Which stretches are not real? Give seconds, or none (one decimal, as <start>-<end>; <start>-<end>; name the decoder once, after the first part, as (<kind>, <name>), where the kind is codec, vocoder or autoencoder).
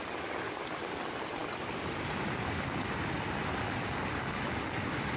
none